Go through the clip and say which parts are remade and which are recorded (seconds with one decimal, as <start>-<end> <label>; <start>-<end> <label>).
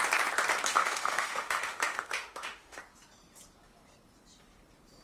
0.0-0.8 recorded; 0.8-2.8 remade; 2.8-5.0 recorded